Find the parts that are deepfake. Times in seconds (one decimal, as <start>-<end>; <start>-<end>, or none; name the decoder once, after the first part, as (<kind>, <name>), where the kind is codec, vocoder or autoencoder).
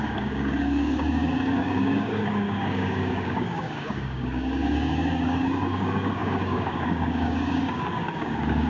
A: 0.0-8.7 (codec, DAC)